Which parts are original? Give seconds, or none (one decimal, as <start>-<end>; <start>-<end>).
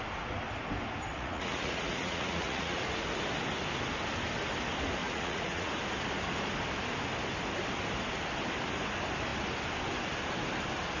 0.0-1.1; 2.8-5.0; 5.7-11.0